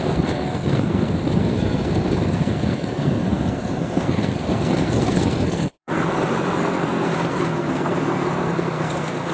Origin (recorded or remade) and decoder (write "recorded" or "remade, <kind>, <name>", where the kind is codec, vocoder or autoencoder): remade, codec, SNAC